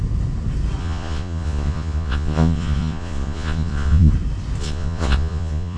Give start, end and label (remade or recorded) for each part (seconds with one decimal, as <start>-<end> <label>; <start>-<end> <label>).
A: 0.0-0.8 recorded; 0.8-4.1 remade; 4.1-4.6 recorded; 4.6-5.8 remade